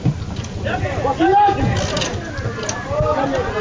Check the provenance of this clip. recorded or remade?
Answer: recorded